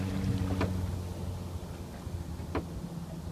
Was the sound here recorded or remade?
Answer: recorded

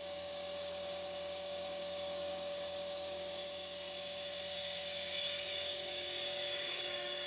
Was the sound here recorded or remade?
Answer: remade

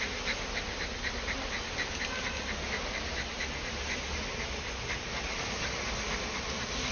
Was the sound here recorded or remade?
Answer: recorded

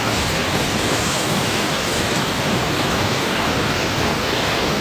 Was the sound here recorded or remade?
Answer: remade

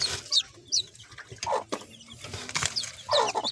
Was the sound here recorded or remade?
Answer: recorded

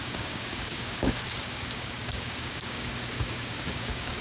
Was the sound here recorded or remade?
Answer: remade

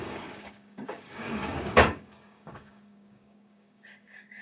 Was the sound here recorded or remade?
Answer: remade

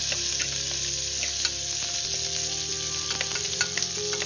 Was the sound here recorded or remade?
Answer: recorded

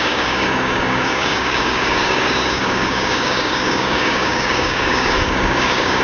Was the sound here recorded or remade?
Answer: remade